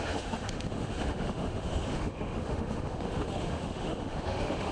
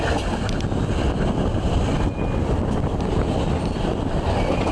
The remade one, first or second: first